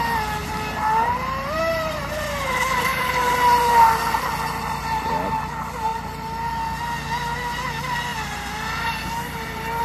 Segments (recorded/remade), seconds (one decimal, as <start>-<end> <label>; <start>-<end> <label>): 0.0-0.4 recorded; 0.4-3.7 remade; 3.7-5.9 recorded; 5.9-6.5 remade; 6.5-8.1 recorded; 8.1-9.8 remade